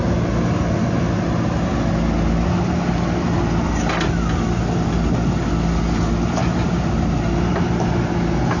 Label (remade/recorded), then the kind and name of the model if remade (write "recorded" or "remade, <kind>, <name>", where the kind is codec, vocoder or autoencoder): recorded